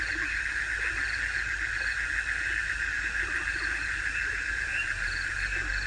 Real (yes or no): yes